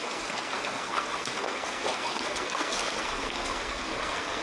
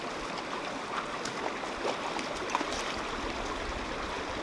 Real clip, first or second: second